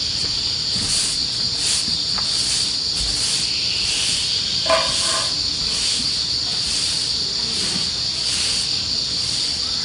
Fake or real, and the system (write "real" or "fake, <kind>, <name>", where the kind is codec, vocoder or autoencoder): real